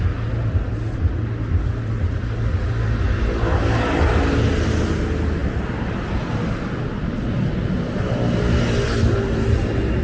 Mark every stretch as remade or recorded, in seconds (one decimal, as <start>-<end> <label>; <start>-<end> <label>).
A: 0.0-10.0 recorded